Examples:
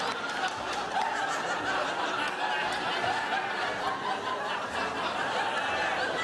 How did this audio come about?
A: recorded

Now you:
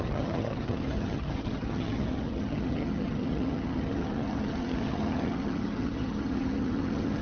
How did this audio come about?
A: remade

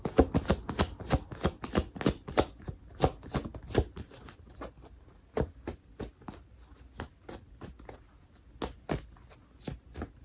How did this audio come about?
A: recorded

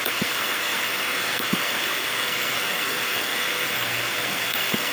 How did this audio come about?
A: remade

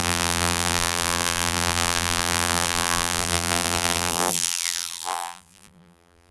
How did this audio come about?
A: remade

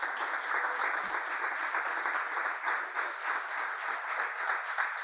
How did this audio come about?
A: recorded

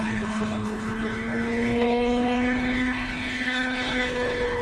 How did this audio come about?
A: remade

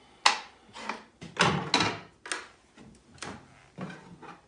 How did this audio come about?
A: recorded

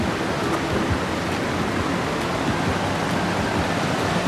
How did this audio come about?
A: recorded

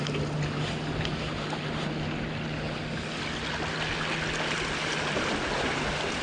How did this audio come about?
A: recorded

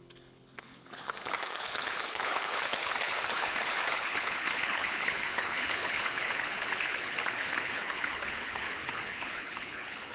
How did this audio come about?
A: remade